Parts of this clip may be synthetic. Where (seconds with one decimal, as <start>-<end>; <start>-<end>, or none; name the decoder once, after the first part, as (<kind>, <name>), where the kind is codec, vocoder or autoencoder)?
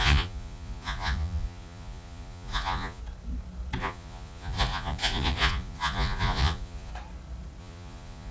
0.0-3.0 (vocoder, Vocos); 3.8-6.9; 7.6-8.3